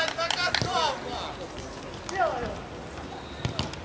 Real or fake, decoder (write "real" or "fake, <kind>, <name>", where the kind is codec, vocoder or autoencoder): real